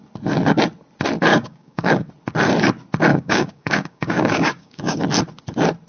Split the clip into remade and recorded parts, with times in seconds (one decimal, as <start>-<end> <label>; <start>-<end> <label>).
0.0-1.3 recorded; 1.3-2.1 remade; 2.1-3.1 recorded; 3.1-5.0 remade; 5.0-5.9 recorded